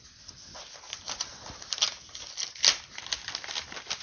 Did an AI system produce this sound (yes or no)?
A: no